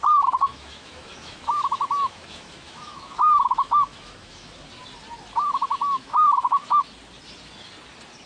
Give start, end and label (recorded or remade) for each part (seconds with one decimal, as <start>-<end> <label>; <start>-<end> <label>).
0.0-0.5 recorded; 0.5-4.7 remade; 4.7-5.5 recorded; 5.5-6.8 remade; 6.8-8.3 recorded